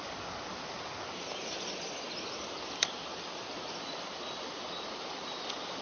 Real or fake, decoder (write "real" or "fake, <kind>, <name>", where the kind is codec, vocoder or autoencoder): real